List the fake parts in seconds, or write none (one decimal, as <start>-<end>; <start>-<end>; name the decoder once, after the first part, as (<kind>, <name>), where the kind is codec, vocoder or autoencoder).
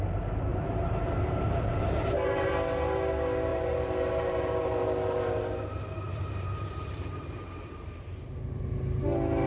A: 0.5-2.5 (vocoder, BigVGAN v2); 3.5-8.6